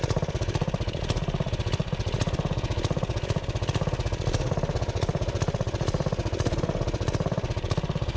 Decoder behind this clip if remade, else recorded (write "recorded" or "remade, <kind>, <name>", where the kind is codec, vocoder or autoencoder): recorded